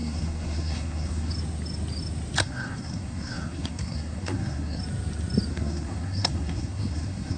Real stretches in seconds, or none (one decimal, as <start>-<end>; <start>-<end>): 1.3-2.4; 4.8-5.5